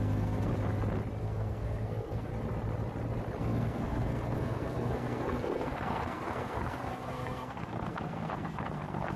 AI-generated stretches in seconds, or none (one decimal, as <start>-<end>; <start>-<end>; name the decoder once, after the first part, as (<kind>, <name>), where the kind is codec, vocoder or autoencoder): 0.0-0.5 (codec, SNAC); 1.2-2.3; 3.4-9.2